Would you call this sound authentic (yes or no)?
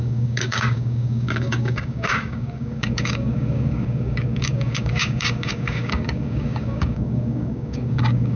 no